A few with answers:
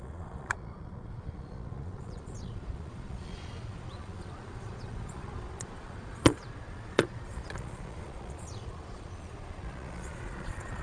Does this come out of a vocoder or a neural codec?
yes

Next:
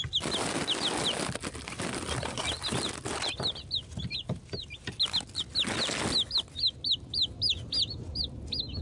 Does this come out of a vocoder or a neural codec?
no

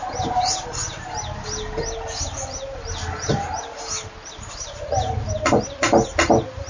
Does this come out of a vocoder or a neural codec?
no